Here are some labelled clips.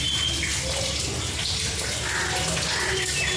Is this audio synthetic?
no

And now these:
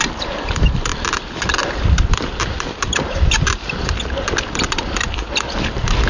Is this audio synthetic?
yes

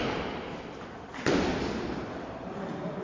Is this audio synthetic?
no